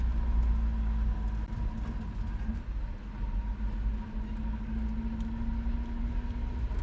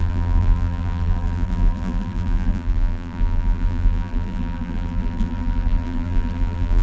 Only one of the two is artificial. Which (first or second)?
second